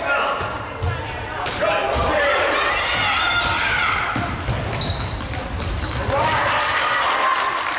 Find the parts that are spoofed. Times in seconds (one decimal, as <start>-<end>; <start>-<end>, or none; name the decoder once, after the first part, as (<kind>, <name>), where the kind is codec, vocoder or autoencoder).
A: 1.8-6.4 (vocoder, BigVGAN v2)